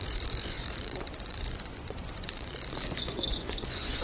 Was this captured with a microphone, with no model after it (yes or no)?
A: no